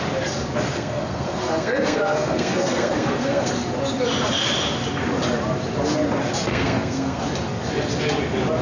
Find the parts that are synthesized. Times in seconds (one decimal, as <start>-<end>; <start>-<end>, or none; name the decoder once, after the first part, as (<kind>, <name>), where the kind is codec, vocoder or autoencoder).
0.7-3.5 (codec, SNAC); 6.5-7.2